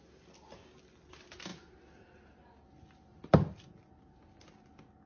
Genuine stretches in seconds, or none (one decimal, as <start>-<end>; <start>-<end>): 0.0-5.1